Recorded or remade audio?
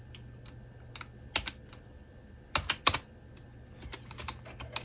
recorded